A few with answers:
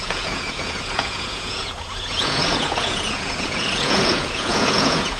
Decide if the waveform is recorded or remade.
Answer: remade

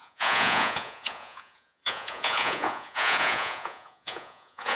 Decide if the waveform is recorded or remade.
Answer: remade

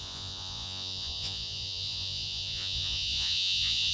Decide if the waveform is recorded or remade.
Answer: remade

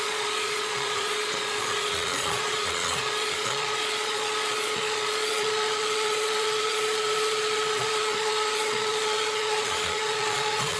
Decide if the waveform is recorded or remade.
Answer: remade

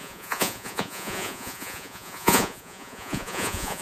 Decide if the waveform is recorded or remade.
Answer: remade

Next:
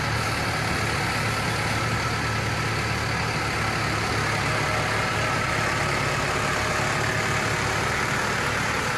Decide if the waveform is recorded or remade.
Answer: recorded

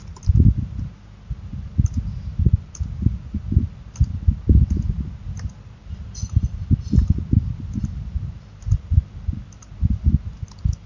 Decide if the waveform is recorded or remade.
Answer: recorded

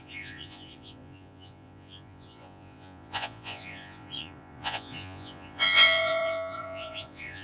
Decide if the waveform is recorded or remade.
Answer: remade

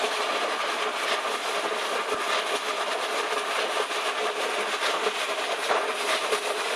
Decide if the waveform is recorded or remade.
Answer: recorded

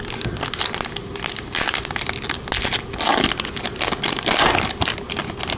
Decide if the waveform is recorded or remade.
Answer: recorded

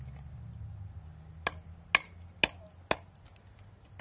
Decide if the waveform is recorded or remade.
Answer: recorded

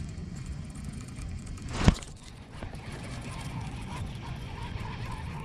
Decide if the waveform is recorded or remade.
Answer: remade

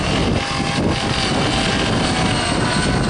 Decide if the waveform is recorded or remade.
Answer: recorded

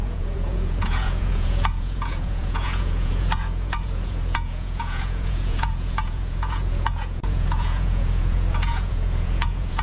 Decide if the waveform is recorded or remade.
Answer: remade